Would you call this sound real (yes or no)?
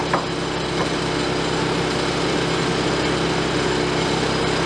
yes